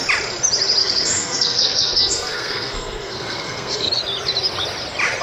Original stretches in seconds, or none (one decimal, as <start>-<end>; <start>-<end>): 0.0-0.8; 3.9-5.2